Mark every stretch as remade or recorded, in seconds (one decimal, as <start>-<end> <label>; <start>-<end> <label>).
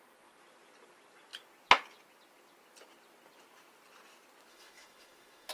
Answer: 0.0-4.5 recorded; 4.5-5.5 remade